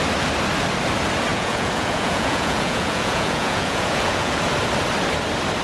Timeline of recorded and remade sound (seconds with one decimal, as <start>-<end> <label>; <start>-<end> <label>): 0.0-1.3 recorded; 1.3-4.4 remade; 4.4-5.6 recorded